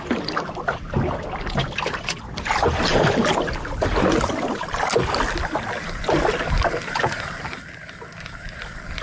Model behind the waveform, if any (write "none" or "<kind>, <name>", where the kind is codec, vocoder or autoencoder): none